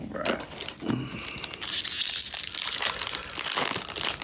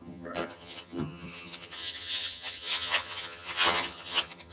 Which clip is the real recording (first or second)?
first